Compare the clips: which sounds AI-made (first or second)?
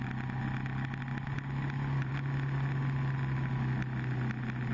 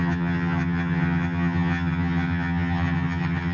second